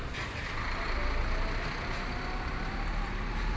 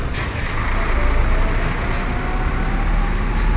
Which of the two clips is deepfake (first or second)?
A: first